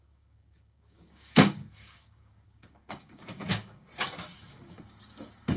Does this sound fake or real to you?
fake